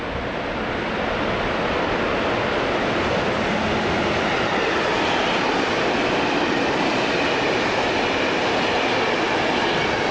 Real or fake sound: real